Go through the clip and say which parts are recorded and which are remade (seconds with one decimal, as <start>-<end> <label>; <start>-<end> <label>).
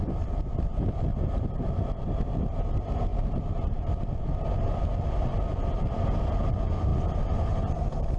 0.0-3.1 recorded; 3.1-4.0 remade; 4.0-8.2 recorded